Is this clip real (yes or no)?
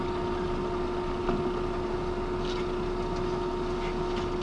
yes